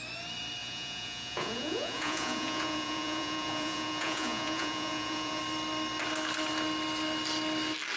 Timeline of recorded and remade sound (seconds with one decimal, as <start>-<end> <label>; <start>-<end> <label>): 0.0-0.6 recorded; 0.6-5.4 remade; 5.4-8.0 recorded